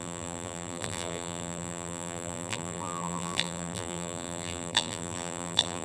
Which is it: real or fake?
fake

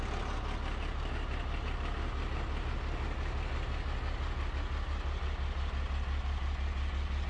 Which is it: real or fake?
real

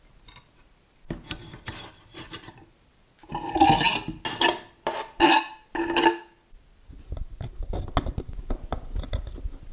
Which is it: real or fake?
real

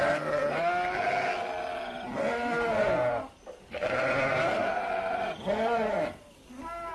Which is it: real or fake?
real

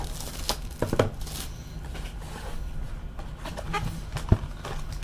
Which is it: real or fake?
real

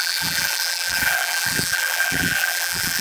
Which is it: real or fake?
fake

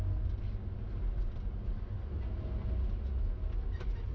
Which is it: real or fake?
real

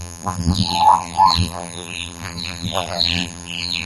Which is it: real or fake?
fake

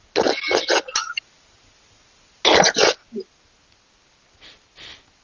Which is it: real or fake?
real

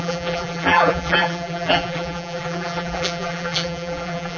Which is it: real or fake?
fake